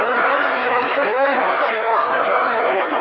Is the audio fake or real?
fake